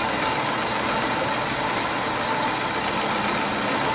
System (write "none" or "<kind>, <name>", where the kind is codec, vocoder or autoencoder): none